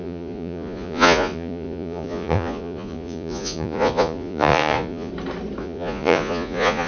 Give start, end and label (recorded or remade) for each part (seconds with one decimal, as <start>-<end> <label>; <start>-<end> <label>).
0.0-5.1 remade; 5.1-5.6 recorded; 5.6-6.9 remade